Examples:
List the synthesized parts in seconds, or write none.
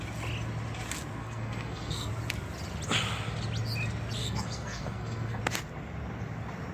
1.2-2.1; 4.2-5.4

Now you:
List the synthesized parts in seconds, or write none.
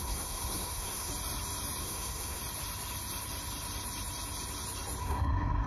0.0-1.1; 1.8-2.4; 5.0-5.7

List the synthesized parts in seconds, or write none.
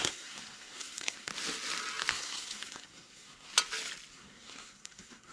0.0-1.3; 2.1-3.5; 4.1-5.3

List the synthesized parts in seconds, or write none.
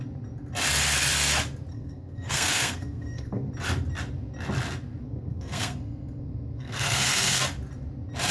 1.7-3.5; 5.0-7.4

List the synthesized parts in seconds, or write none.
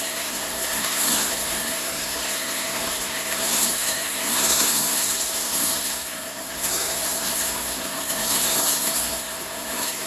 0.0-10.1